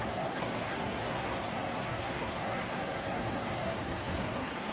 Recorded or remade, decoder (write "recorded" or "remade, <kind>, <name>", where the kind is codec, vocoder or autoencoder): remade, codec, SNAC